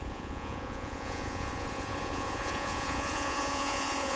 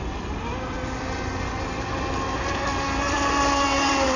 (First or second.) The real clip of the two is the second